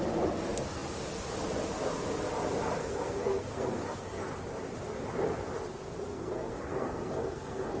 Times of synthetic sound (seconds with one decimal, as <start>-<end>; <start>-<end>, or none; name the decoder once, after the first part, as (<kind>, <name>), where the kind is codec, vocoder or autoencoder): 2.8-4.2 (codec, SNAC); 6.1-7.8